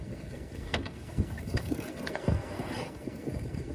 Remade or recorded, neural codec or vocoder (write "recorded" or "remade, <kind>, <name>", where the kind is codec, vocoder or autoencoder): remade, codec, SNAC